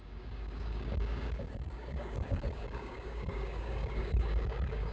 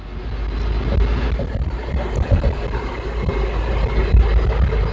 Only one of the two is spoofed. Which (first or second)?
first